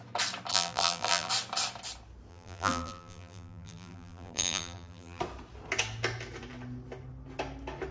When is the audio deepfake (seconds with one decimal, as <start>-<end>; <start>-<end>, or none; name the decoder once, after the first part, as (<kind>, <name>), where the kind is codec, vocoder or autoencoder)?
0.5-1.3 (vocoder, BigVGAN v2); 2.3-5.2